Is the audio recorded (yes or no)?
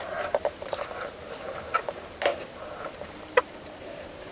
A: no